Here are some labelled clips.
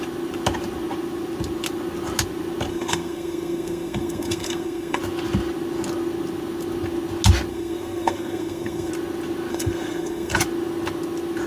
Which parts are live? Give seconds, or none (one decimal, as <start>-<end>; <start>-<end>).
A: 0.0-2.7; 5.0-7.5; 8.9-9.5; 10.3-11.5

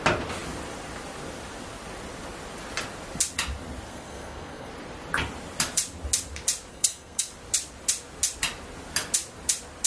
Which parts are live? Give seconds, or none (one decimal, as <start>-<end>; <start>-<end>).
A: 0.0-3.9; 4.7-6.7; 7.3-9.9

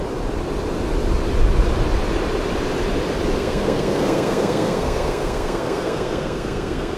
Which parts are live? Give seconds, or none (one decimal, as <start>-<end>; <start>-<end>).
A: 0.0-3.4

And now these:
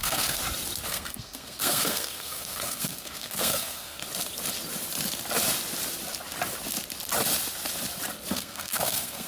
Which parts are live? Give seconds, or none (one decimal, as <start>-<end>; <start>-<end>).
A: 0.4-0.9; 4.0-8.3